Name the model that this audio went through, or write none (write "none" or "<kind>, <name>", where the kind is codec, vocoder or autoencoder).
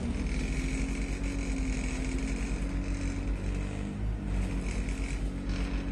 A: none